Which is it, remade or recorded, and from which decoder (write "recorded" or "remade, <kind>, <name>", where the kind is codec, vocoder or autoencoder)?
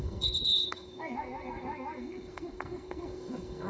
remade, codec, SNAC